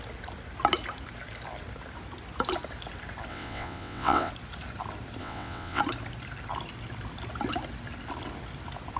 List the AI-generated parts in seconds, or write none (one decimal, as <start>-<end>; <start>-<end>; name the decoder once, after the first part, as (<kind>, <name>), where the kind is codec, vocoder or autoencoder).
3.3-4.3 (vocoder, WaveNeXt); 5.2-5.8

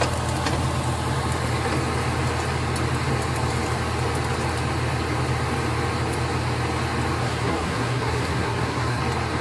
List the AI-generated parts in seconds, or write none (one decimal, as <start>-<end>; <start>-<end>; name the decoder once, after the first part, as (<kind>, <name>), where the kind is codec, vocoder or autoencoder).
7.2-9.0 (codec, SNAC)

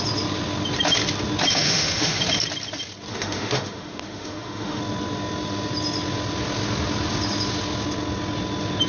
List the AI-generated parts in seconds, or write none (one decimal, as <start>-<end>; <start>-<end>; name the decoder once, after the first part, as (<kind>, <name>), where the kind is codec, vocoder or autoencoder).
1.5-2.2 (autoencoder, DAC-VAE); 3.1-4.8

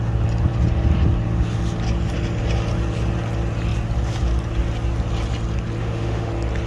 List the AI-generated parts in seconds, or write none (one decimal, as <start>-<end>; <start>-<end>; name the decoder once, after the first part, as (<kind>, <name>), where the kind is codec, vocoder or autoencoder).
5.8-6.3 (autoencoder, DAC-VAE)

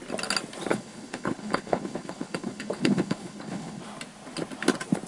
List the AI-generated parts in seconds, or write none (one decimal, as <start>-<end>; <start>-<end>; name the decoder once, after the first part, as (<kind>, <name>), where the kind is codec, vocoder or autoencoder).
0.7-3.8 (codec, HILCodec)